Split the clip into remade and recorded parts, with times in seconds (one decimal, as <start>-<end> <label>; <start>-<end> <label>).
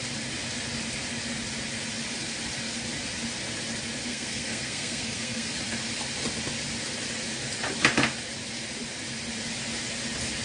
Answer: 0.0-4.1 recorded; 4.1-5.5 remade; 5.5-10.4 recorded